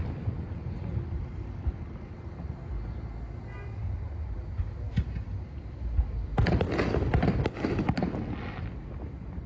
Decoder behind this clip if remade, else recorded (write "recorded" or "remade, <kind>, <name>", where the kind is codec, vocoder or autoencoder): recorded